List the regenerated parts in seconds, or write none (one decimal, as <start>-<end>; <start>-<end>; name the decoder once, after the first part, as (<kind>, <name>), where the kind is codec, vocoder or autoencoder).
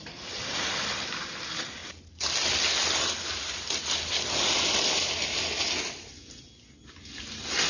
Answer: none